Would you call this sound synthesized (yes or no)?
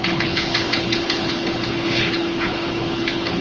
yes